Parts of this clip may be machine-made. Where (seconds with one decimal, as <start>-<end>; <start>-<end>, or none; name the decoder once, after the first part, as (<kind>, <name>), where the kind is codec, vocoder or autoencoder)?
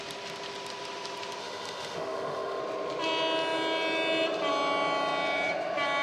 1.4-2.6 (autoencoder, DAC-VAE)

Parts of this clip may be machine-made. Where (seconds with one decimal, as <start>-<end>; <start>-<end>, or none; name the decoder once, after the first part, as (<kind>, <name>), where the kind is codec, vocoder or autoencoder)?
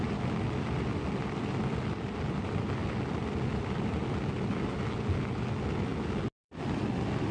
none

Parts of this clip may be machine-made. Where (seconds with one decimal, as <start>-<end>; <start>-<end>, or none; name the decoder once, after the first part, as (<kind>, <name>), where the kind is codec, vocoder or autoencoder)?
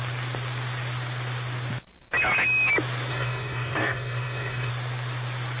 3.1-4.7 (codec, SNAC)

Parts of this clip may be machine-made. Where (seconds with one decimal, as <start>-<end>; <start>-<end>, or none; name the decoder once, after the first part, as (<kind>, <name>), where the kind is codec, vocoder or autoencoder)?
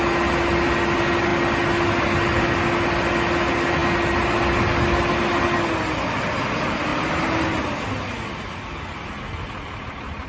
none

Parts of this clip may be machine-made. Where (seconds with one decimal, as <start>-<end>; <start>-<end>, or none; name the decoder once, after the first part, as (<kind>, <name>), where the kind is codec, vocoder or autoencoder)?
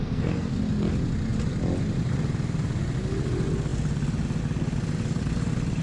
0.0-0.6 (codec, SNAC)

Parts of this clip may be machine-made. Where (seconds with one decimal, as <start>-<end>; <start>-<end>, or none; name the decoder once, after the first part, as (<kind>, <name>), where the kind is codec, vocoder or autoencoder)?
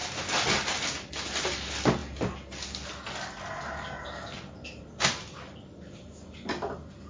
none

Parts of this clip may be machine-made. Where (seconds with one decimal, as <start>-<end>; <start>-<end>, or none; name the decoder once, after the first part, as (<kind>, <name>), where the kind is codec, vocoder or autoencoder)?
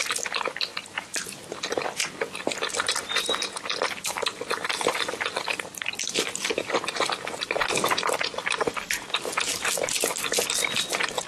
none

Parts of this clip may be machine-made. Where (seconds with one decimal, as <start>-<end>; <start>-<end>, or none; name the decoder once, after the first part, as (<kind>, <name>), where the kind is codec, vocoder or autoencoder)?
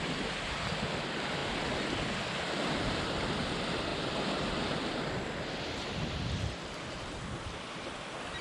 0.0-1.4 (vocoder, BigVGAN v2); 2.1-8.4